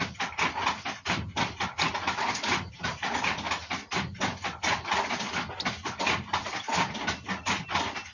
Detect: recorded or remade recorded